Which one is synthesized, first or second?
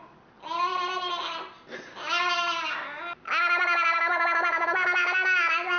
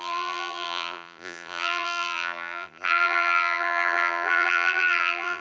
second